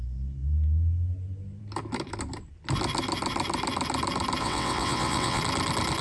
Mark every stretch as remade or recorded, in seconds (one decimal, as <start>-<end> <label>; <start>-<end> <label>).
0.0-4.4 recorded; 4.4-5.4 remade; 5.4-6.0 recorded